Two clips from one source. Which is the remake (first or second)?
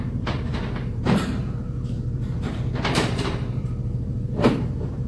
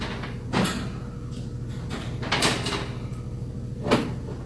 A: first